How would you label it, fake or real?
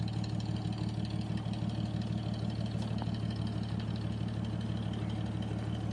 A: real